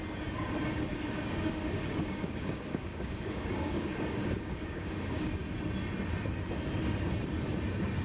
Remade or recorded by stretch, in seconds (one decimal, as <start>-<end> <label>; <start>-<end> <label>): 0.0-0.6 recorded; 0.6-5.4 remade; 5.4-8.0 recorded